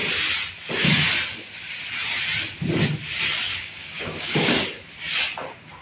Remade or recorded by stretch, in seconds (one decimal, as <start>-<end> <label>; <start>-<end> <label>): 0.0-3.5 recorded; 3.5-4.5 remade; 4.5-5.8 recorded